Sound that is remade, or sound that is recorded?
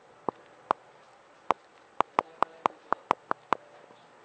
recorded